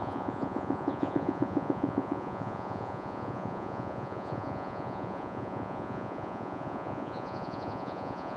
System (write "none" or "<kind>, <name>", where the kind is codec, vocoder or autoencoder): vocoder, Vocos